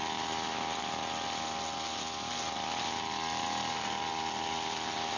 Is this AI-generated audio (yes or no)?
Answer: no